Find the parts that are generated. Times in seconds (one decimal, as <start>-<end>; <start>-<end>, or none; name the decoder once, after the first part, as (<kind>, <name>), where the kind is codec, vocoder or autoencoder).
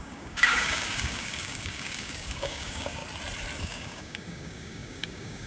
0.0-3.0 (codec, DAC); 3.6-5.5